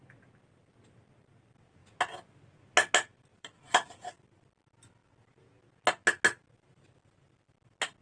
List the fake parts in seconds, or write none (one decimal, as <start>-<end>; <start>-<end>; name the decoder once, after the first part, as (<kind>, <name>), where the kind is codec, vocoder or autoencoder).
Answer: 3.3-4.1 (vocoder, BigVGAN v2)